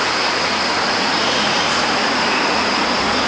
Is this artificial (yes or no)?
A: yes